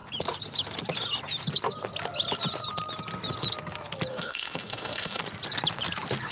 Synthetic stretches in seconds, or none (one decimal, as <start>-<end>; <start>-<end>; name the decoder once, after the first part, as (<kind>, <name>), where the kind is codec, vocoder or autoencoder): 4.1-5.2 (autoencoder, DAC-VAE)